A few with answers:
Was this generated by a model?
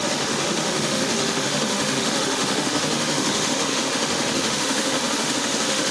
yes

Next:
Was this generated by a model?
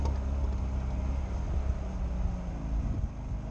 no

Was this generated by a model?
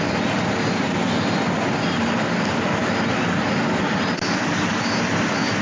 no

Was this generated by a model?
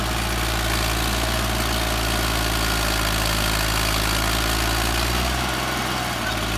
no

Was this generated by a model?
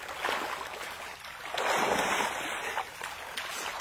no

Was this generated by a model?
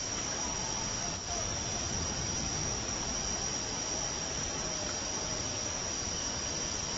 no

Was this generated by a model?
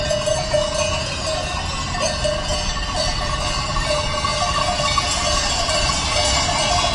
no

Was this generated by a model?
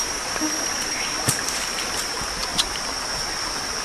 no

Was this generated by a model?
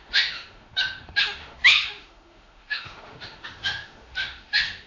yes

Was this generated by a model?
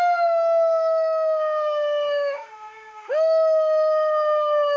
yes